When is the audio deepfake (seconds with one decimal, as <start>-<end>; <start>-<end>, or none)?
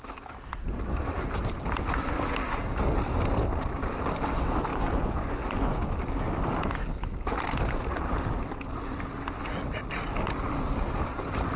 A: 4.7-5.9